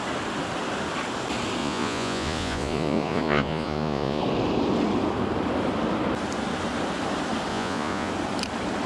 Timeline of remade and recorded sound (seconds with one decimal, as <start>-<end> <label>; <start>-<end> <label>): 0.0-1.6 recorded; 1.6-4.2 remade; 4.2-7.5 recorded; 7.5-8.1 remade; 8.1-8.9 recorded